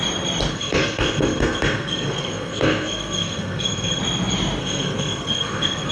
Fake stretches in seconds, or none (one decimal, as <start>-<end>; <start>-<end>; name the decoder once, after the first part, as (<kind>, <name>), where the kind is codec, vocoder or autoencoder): 0.5-4.0 (codec, SNAC); 4.6-5.9